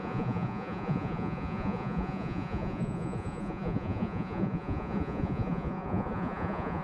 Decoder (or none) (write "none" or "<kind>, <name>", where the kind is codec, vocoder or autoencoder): vocoder, Vocos